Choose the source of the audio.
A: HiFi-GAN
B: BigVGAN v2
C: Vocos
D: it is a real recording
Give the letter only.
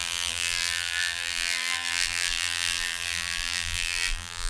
B